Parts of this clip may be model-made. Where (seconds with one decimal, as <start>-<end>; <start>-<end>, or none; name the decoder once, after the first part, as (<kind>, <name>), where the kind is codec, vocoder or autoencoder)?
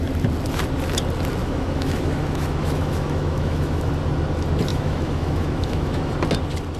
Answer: 1.4-3.9 (autoencoder, DAC-VAE); 4.7-6.1